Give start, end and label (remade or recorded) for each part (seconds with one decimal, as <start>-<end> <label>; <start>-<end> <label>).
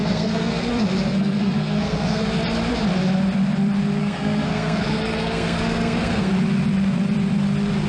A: 0.0-0.7 remade; 0.7-1.1 recorded; 1.1-2.2 remade; 2.2-4.0 recorded; 4.0-6.3 remade; 6.3-7.9 recorded